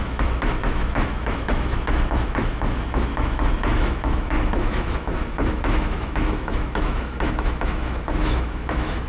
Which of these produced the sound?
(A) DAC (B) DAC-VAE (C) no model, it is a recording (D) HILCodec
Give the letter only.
B